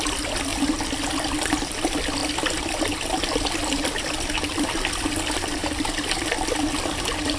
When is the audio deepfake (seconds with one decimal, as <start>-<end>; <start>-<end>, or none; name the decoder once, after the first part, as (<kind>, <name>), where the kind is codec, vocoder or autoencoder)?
0.5-1.1 (vocoder, BigVGAN v2); 5.6-6.3